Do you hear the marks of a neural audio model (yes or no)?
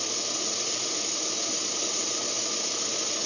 no